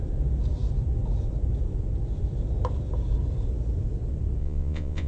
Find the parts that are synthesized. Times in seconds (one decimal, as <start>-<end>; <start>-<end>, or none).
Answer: 4.4-5.1